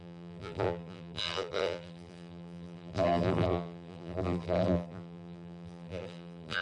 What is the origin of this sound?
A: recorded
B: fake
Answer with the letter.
B